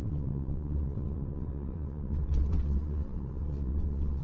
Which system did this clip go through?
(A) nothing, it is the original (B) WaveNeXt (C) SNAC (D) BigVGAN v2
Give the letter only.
B